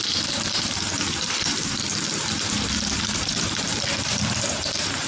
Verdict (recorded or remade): remade